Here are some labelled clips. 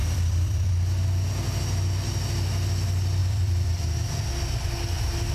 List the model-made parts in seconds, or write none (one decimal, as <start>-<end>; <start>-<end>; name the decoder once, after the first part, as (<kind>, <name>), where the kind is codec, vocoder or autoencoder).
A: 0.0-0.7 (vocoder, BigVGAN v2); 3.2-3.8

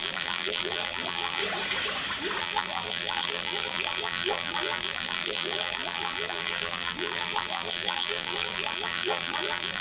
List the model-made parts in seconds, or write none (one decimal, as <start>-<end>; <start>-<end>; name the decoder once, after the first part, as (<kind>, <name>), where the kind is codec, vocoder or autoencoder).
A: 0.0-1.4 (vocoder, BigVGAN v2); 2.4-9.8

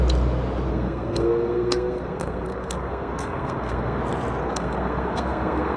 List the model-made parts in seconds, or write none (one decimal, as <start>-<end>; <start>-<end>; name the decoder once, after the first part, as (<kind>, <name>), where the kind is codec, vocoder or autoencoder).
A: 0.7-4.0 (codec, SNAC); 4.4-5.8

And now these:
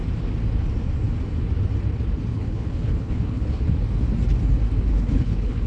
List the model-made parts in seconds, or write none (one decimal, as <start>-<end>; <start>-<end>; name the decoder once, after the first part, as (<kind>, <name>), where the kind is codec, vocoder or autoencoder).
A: 2.3-3.6 (codec, HILCodec); 4.9-5.7